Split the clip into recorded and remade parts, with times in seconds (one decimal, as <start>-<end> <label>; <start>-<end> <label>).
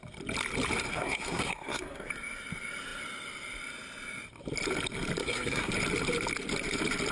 0.0-0.9 recorded; 0.9-2.1 remade; 2.1-5.2 recorded; 5.2-5.7 remade; 5.7-7.1 recorded